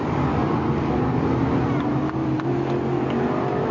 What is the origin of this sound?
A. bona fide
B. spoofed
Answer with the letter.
A